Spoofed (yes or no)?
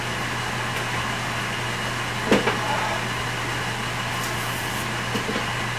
no